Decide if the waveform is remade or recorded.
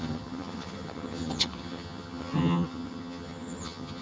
remade